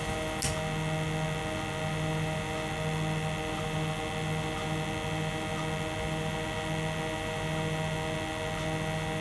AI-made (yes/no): no